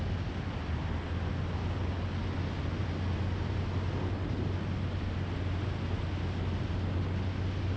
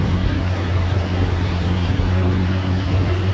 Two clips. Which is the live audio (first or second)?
first